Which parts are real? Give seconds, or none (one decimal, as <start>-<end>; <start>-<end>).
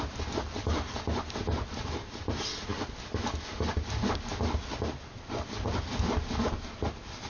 0.0-7.3